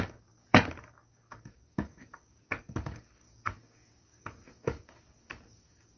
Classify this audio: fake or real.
fake